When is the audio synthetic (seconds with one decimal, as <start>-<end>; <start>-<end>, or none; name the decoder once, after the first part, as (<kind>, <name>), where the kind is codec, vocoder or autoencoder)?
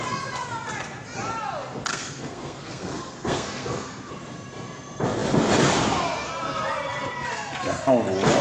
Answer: 1.9-4.1 (codec, SNAC)